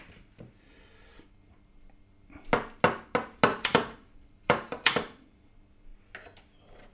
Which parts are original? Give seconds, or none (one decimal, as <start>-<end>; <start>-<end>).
0.0-3.5; 5.5-6.9